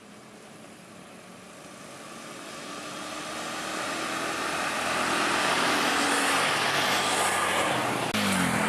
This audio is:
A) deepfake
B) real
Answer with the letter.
B